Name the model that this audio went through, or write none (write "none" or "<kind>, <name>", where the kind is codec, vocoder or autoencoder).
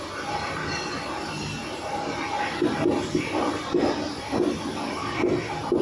none